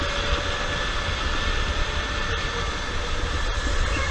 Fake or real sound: fake